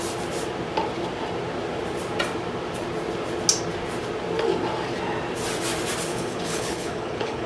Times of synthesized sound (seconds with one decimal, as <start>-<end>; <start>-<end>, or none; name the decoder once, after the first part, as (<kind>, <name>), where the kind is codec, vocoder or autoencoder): 6.1-7.5 (codec, HILCodec)